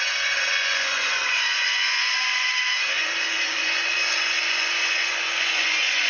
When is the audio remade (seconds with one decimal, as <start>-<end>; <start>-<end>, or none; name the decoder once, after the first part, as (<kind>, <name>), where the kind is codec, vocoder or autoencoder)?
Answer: 0.0-6.1 (vocoder, Vocos)